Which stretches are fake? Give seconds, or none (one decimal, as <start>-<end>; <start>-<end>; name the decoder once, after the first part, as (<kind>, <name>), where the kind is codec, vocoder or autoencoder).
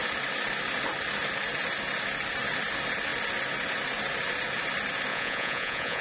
5.1-6.0 (vocoder, Vocos)